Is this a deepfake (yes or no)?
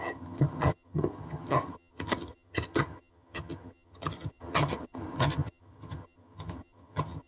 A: yes